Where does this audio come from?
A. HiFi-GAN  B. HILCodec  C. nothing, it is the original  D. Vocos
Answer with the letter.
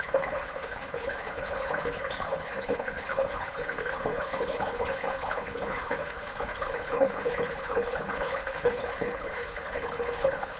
B